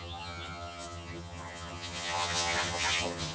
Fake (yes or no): yes